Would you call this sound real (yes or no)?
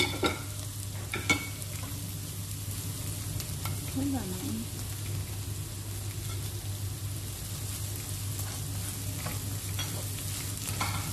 yes